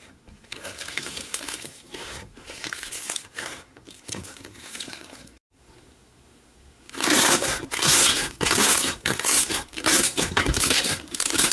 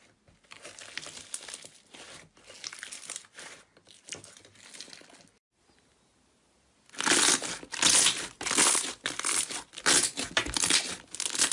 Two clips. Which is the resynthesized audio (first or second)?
first